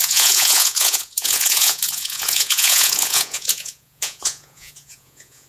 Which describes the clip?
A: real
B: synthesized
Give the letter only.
B